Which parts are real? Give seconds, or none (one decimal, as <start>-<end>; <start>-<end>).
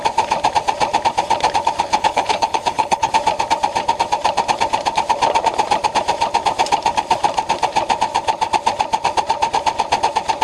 0.0-1.9; 3.1-10.4